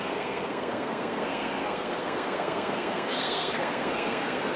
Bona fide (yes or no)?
no